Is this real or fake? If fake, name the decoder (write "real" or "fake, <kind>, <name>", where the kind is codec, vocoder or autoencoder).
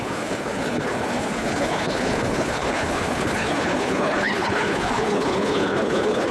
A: fake, codec, HILCodec